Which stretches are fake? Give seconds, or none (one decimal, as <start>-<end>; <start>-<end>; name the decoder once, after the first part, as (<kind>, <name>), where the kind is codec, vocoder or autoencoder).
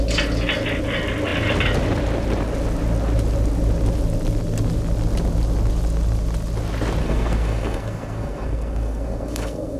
7.0-9.8 (codec, SNAC)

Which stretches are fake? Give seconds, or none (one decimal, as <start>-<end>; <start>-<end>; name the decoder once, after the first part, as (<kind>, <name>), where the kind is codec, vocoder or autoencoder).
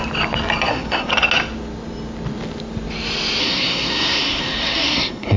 0.7-1.1 (codec, SNAC); 3.4-5.4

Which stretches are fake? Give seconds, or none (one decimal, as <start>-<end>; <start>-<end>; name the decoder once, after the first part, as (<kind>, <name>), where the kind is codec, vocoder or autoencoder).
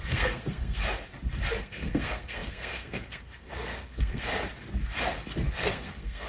0.0-0.8 (codec, SNAC); 1.6-4.3; 5.5-6.3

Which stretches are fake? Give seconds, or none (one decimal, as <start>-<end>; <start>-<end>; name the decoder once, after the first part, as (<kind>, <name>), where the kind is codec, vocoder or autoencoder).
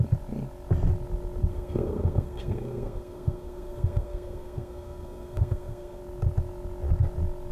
1.5-6.0 (codec, SNAC)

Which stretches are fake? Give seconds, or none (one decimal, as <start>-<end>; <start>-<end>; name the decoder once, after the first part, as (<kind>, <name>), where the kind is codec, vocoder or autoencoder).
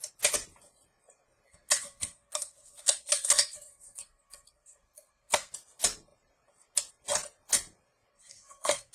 1.5-5.5 (codec, SNAC); 8.1-8.9